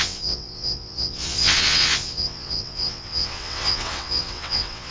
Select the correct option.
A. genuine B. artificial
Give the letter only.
B